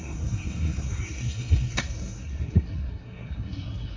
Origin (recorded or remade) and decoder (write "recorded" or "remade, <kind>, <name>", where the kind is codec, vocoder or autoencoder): remade, codec, SNAC